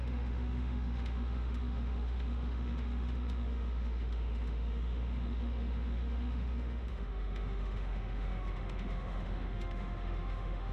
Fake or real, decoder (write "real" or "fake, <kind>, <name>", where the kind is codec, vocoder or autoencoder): fake, autoencoder, DAC-VAE